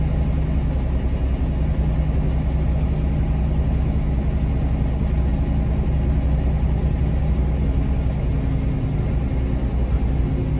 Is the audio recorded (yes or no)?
yes